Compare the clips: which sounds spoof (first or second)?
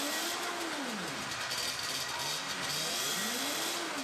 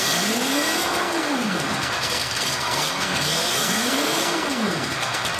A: second